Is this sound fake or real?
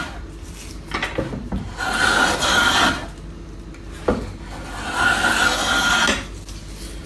real